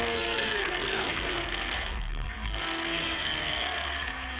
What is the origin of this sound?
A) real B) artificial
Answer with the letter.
B